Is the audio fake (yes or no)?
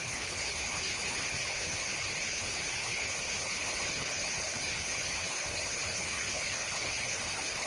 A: yes